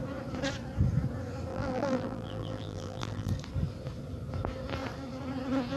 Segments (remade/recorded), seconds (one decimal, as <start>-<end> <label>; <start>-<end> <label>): 0.0-1.5 recorded; 1.5-3.3 remade; 3.3-5.8 recorded